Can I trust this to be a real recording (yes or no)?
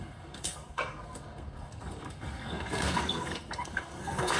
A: no